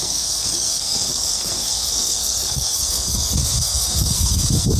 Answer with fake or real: fake